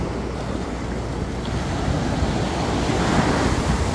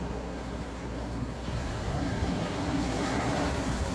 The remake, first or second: second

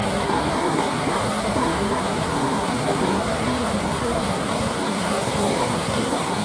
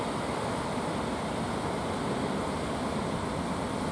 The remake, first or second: first